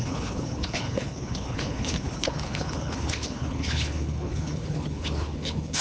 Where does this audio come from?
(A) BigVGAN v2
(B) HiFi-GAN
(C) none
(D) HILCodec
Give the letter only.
D